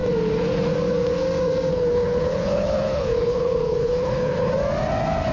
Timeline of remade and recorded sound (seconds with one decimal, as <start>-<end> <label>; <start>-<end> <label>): 0.0-1.7 recorded; 1.7-4.5 remade; 4.5-5.3 recorded